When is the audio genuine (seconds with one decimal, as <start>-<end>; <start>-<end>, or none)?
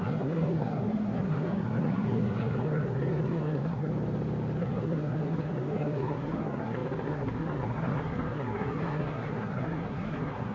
3.9-4.6